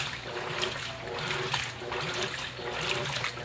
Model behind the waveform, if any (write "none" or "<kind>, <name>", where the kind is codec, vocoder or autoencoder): none